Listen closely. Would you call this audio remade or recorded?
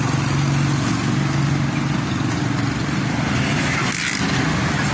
recorded